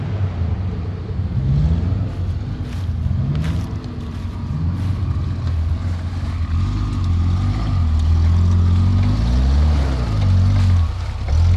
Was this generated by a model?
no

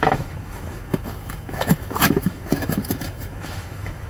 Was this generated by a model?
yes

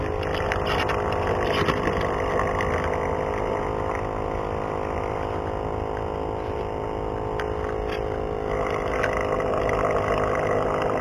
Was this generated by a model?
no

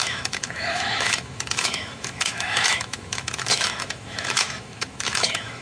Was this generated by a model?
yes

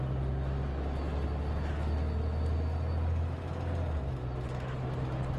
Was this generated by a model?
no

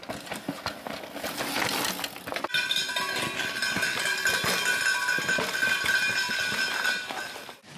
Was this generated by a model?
no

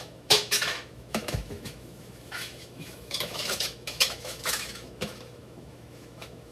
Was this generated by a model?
yes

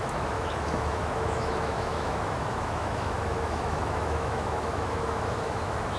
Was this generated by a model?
yes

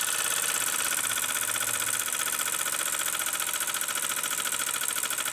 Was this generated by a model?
no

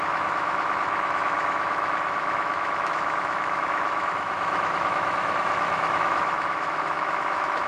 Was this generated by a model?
yes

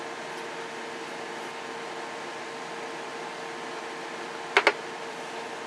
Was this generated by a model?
no